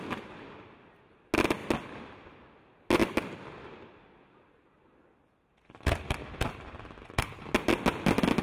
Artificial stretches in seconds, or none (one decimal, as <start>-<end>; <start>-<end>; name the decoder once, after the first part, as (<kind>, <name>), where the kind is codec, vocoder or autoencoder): none